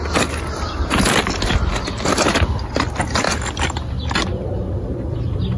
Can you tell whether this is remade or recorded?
recorded